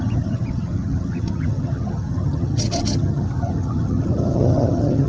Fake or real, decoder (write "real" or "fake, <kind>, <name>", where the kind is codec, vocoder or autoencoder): fake, vocoder, HiFi-GAN